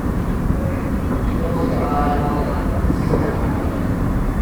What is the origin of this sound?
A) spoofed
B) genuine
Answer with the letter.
A